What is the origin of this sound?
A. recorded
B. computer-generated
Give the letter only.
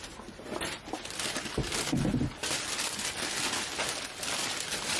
B